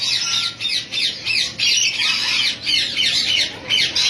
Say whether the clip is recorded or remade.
recorded